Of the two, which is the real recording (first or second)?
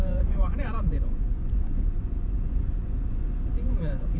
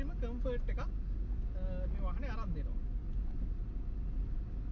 second